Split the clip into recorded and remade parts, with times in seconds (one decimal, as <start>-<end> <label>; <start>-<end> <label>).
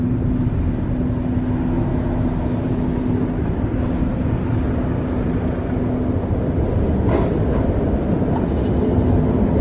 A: 0.0-9.6 recorded